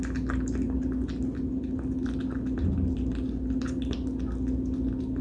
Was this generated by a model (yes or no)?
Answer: no